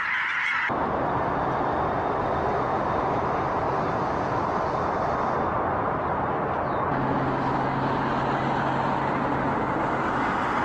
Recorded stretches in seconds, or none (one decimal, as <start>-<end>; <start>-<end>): 0.0-10.6